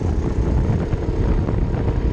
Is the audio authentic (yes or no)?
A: no